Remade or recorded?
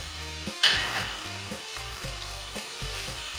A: remade